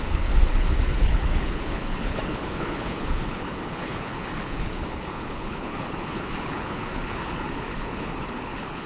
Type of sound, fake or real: fake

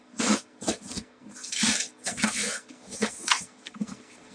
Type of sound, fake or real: fake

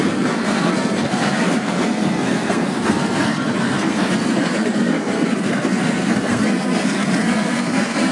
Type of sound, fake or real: fake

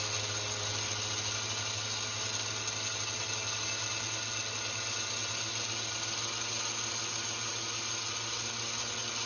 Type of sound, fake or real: real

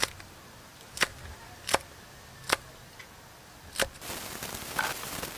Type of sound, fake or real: real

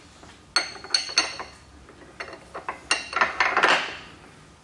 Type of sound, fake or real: real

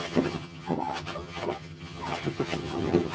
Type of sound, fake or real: fake